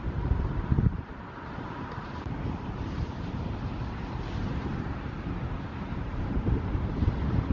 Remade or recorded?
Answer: remade